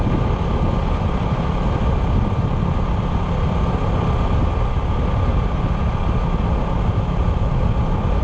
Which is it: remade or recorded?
recorded